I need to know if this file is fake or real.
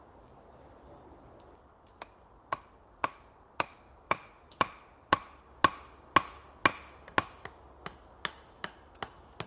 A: real